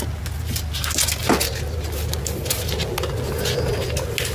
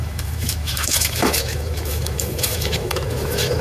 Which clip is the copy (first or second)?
second